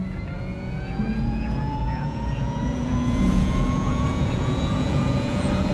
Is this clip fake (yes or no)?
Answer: yes